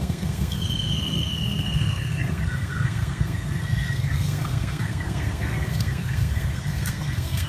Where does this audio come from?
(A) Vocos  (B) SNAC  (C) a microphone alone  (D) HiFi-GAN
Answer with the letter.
B